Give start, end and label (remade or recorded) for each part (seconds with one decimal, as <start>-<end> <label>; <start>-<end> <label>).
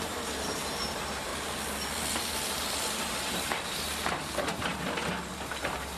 0.0-1.3 remade; 1.3-2.1 recorded; 2.1-4.7 remade; 4.7-5.3 recorded; 5.3-6.0 remade